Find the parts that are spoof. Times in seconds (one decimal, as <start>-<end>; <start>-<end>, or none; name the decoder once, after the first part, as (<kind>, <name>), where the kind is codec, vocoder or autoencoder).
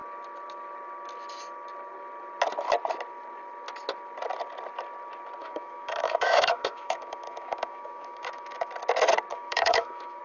5.4-8.7 (autoencoder, DAC-VAE); 9.3-10.2